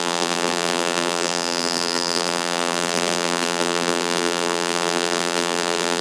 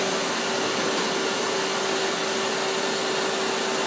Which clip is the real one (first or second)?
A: second